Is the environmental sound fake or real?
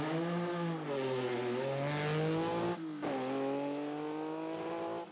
real